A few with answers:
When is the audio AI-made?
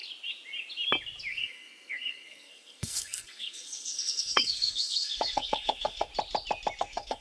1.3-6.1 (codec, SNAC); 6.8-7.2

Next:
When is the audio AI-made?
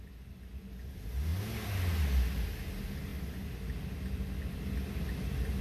none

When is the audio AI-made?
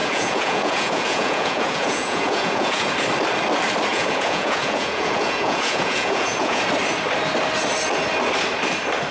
0.0-2.9 (vocoder, Vocos); 3.9-6.6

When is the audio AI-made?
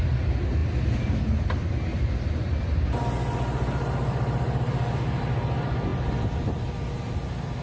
none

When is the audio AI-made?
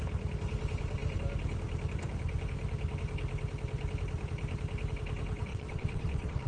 5.5-6.5 (vocoder, WaveNeXt)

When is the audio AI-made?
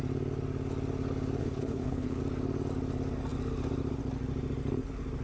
1.4-2.2 (codec, HILCodec)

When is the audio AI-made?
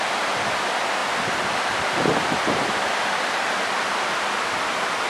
none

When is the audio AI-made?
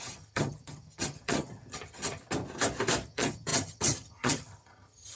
0.0-2.2 (vocoder, HiFi-GAN); 3.1-5.2